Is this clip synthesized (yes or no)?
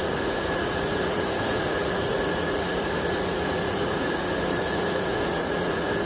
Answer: yes